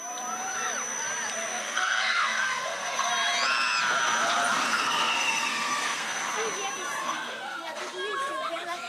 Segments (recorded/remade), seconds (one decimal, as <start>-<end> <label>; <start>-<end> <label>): 0.0-1.6 recorded; 1.6-3.1 remade; 3.1-4.7 recorded; 4.7-6.2 remade; 6.2-7.0 recorded; 7.0-7.8 remade; 7.8-8.9 recorded